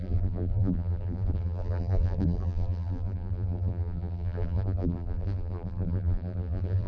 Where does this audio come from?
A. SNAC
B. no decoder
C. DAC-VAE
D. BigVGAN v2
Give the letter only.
D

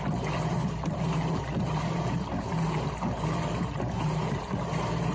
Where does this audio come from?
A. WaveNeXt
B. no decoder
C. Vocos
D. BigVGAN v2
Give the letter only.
D